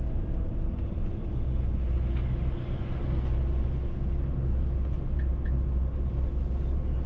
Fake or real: real